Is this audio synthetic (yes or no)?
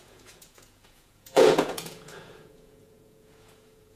yes